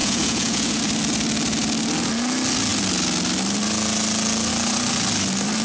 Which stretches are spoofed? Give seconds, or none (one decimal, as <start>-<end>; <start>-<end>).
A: 0.0-0.8